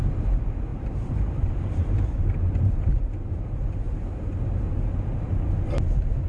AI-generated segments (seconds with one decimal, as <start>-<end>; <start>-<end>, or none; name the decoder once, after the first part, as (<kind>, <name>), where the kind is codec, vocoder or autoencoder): 0.7-4.4 (vocoder, BigVGAN v2)